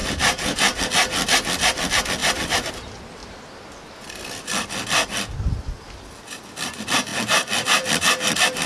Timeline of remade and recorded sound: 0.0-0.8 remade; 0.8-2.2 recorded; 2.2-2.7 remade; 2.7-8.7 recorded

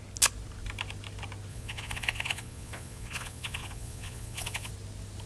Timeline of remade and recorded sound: 0.0-1.5 recorded; 1.5-4.7 remade; 4.7-5.3 recorded